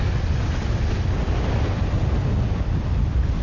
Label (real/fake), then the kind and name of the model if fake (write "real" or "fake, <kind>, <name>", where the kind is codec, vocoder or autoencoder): real